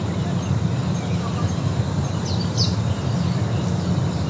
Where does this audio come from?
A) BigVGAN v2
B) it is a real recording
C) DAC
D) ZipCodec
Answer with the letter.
B